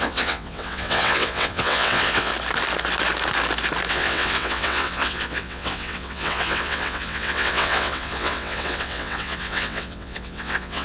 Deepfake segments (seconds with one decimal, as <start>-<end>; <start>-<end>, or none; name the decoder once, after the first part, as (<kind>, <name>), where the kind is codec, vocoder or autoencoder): 0.0-2.3 (vocoder, WaveNeXt); 3.9-10.8